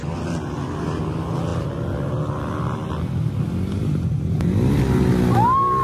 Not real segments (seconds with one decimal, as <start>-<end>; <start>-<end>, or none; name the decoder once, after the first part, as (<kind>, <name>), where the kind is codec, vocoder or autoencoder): none